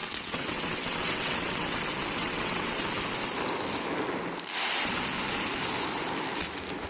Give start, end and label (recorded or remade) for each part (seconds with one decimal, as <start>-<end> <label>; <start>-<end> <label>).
0.0-1.8 remade; 1.8-2.2 recorded; 2.2-2.8 remade; 2.8-6.9 recorded